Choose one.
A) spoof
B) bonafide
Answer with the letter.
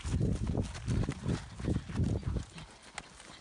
B